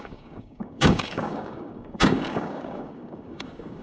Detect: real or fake fake